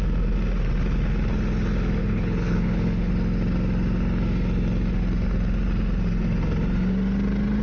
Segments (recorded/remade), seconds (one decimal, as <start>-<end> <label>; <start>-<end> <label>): 0.0-2.0 recorded; 2.0-3.1 remade; 3.1-7.6 recorded